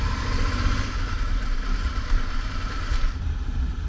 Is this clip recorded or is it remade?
remade